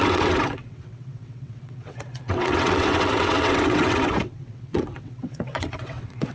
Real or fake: fake